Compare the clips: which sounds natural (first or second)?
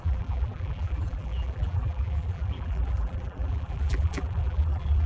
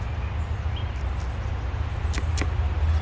second